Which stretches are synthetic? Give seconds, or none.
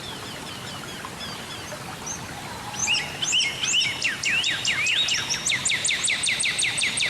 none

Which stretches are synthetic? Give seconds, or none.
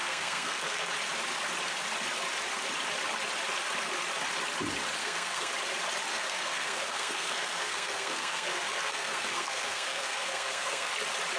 0.0-0.9; 5.0-5.5; 6.1-10.9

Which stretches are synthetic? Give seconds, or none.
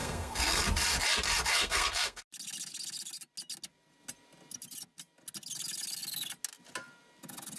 0.0-0.6; 1.5-2.2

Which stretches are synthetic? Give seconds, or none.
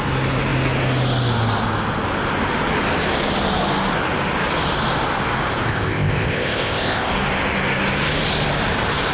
5.7-7.1